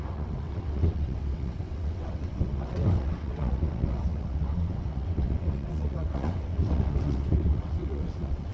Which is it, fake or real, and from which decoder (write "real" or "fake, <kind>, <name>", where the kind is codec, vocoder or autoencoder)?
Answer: fake, vocoder, WaveNeXt